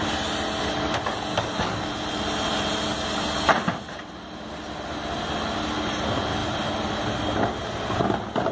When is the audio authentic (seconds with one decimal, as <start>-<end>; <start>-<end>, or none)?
0.0-1.3; 1.9-8.5